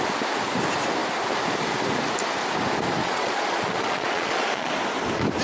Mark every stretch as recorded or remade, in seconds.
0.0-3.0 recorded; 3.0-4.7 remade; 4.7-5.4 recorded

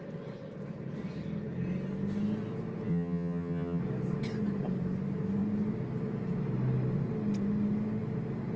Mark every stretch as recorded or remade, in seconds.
0.0-2.9 recorded; 2.9-3.8 remade; 3.8-8.6 recorded

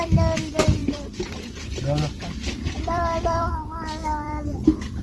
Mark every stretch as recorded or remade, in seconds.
0.0-0.8 recorded; 0.8-3.5 remade; 3.5-4.0 recorded; 4.0-5.0 remade

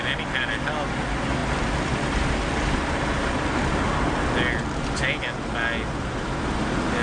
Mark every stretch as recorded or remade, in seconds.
0.0-7.0 recorded

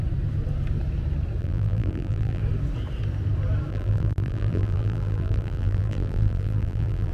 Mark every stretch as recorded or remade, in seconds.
0.0-1.4 recorded; 1.4-2.4 remade; 2.4-3.7 recorded; 3.7-7.1 remade

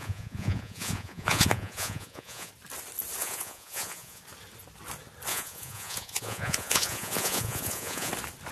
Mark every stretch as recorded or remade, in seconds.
0.0-2.5 remade; 2.5-3.2 recorded; 3.2-4.2 remade; 4.2-5.3 recorded; 5.3-8.1 remade; 8.1-8.5 recorded